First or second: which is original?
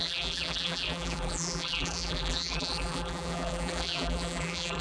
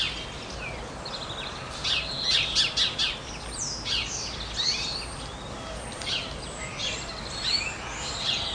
second